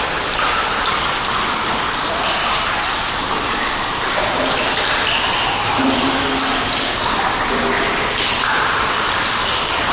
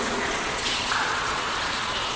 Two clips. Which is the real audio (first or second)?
first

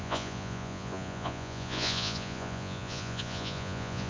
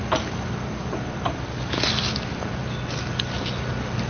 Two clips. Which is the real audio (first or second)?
second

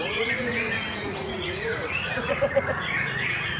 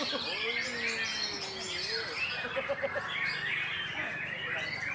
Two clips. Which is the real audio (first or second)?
second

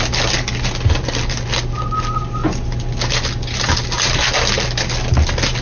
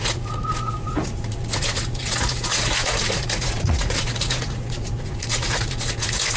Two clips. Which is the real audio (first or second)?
first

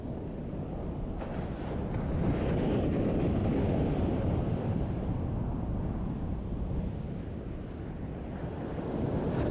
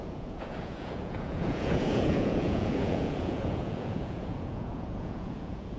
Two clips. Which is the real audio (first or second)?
first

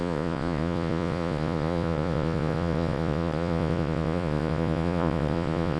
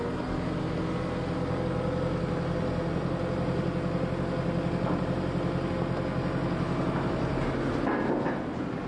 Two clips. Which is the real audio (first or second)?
second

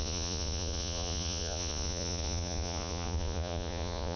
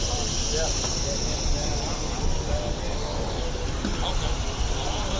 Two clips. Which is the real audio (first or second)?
second